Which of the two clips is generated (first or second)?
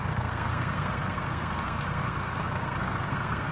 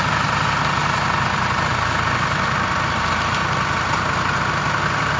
first